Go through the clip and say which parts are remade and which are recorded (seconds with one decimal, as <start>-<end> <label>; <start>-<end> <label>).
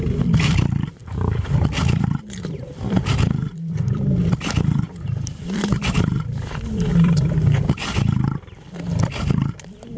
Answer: 0.0-10.0 remade